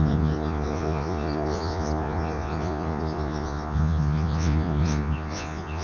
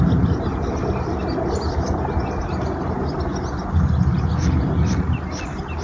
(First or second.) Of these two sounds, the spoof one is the first